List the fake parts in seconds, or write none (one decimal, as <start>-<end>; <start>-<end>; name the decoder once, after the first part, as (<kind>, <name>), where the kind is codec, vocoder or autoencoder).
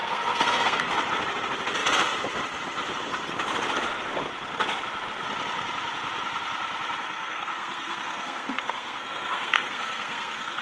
0.0-0.9 (codec, SNAC); 7.0-10.6